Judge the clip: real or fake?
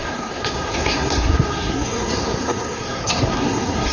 fake